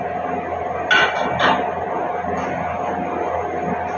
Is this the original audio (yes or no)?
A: yes